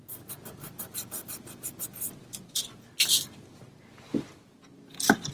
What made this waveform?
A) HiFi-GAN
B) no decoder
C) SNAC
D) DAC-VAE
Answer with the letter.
B